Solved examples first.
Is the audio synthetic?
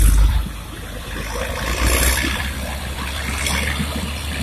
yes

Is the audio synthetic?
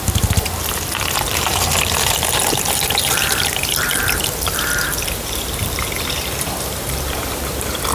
yes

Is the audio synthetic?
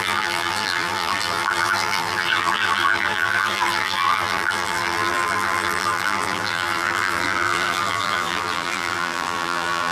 yes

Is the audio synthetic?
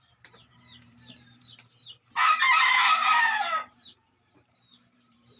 yes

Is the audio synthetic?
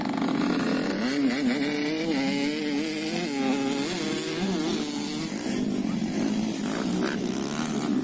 no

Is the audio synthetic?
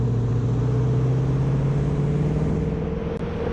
no